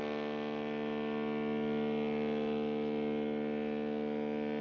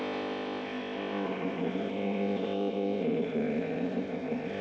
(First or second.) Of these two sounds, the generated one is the second